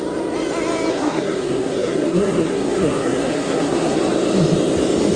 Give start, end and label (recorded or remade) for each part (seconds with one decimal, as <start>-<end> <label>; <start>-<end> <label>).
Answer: 0.0-0.9 recorded; 0.9-4.0 remade; 4.0-5.2 recorded